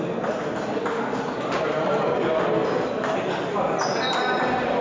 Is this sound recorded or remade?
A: recorded